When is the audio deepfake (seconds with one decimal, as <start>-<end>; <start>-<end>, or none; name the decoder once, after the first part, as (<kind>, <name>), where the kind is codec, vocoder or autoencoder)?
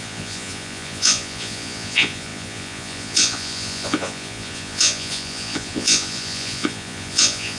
0.0-7.6 (vocoder, Vocos)